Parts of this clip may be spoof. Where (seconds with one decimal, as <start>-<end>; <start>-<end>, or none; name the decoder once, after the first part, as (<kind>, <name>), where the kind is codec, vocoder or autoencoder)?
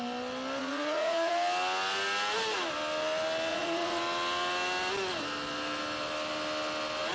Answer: 0.6-1.3 (vocoder, Vocos); 3.5-4.0